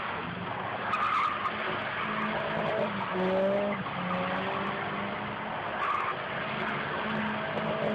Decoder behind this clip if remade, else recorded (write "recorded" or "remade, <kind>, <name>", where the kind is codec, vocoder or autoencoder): recorded